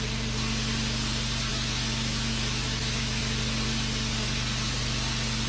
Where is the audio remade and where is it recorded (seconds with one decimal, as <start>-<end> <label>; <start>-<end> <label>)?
0.0-1.5 recorded; 1.5-3.2 remade; 3.2-5.5 recorded